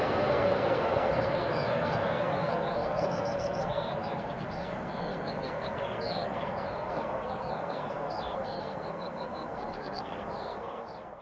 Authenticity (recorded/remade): remade